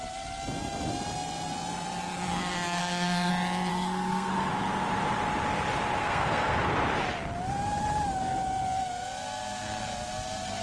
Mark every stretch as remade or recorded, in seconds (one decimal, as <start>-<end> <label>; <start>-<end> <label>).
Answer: 0.0-2.3 recorded; 2.3-3.3 remade; 3.3-3.7 recorded; 3.7-4.5 remade; 4.5-6.0 recorded; 6.0-6.6 remade; 6.6-10.6 recorded